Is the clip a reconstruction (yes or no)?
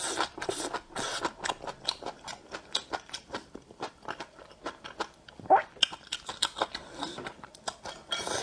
no